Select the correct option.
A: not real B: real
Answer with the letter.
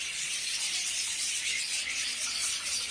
A